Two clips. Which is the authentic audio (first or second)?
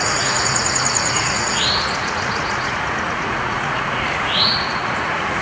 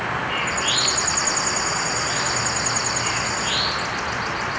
second